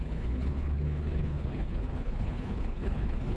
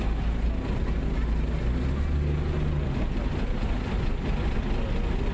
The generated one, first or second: first